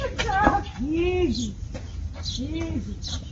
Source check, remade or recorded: recorded